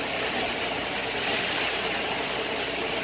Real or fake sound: fake